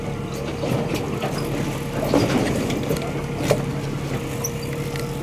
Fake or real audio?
real